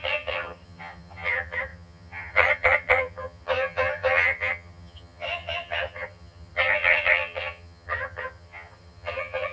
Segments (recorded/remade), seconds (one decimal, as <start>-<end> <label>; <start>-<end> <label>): 0.0-9.5 remade